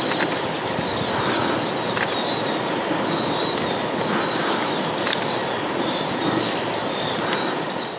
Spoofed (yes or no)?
no